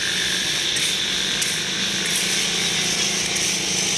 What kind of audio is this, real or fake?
real